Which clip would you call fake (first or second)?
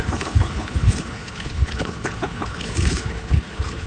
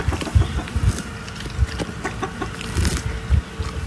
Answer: first